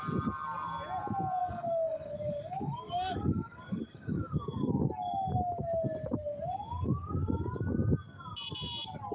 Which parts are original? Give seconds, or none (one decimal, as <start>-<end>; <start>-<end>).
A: 0.0-1.4; 4.7-9.1